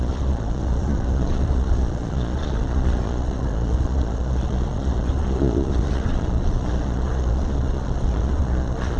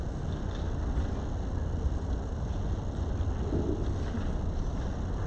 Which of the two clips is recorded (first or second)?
second